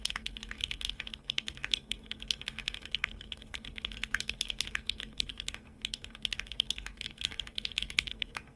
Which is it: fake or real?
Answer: fake